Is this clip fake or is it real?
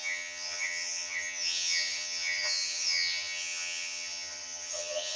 fake